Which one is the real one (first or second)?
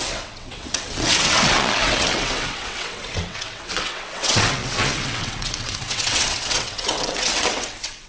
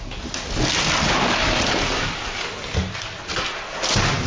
second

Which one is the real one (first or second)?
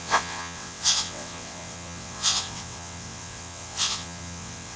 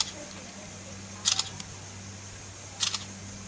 second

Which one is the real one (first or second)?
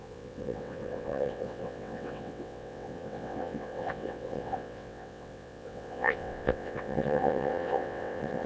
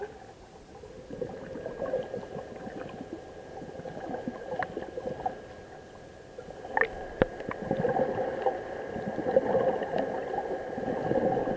second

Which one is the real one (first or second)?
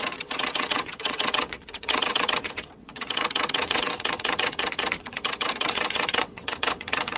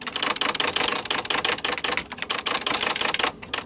second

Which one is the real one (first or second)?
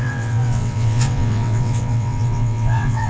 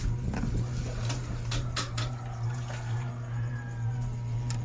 second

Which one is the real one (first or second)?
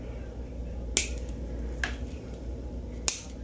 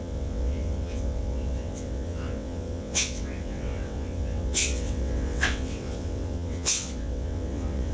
first